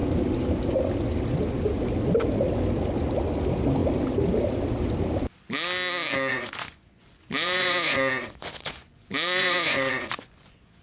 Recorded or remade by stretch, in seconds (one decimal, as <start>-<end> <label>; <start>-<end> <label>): 0.0-6.3 recorded; 6.3-10.8 remade